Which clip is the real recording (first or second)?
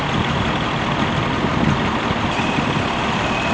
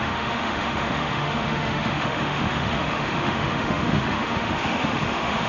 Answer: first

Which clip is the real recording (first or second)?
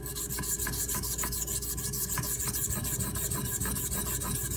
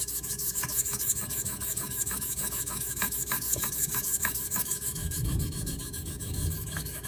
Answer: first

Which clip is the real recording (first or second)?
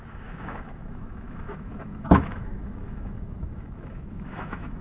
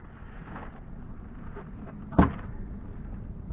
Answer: second